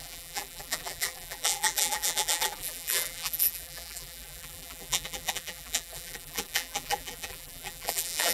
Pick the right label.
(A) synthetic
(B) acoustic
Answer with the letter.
A